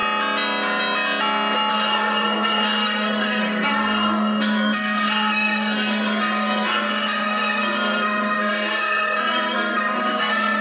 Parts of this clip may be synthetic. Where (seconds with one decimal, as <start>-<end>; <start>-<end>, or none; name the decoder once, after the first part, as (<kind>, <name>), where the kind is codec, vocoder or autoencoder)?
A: 1.7-10.6 (codec, SNAC)